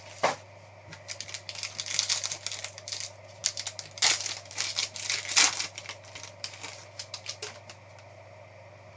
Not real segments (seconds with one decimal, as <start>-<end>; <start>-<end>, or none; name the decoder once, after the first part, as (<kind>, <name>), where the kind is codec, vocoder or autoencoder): none